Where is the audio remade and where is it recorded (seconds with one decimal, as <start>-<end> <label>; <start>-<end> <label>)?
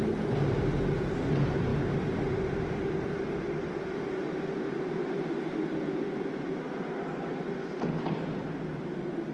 0.0-9.3 recorded